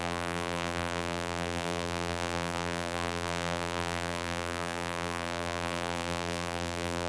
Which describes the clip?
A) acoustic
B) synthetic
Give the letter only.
B